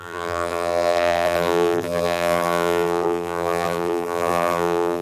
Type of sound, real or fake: fake